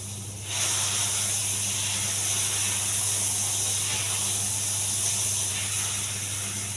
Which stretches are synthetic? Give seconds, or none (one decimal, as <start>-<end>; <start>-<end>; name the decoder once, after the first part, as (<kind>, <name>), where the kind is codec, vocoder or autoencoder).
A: none